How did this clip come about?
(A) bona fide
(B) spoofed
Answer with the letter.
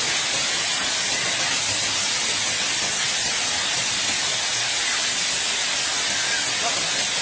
A